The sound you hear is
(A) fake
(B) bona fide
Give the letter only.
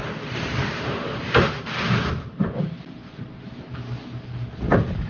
A